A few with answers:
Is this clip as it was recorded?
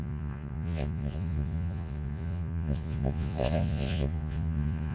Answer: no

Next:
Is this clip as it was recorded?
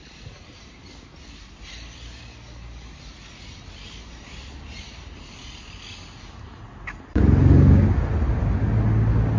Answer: yes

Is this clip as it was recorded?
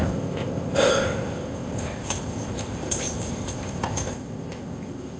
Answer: no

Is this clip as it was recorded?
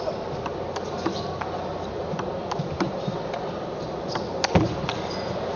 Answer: yes